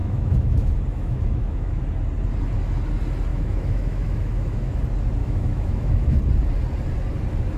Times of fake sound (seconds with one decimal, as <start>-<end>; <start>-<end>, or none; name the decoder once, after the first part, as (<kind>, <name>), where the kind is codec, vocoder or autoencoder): 0.0-1.8 (autoencoder, DAC-VAE); 3.3-4.8; 5.2-6.2